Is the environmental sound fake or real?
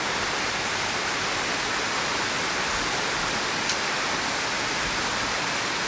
real